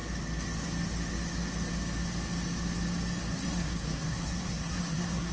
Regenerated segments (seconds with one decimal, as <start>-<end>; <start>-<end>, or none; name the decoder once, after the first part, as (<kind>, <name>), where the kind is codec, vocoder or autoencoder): 3.3-5.3 (codec, SNAC)